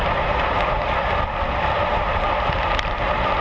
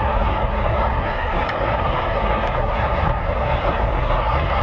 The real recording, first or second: first